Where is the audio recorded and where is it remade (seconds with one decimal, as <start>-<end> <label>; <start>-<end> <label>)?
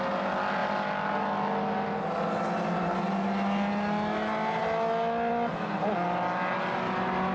0.0-7.3 recorded